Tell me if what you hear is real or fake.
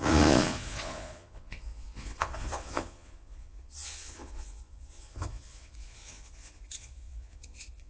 fake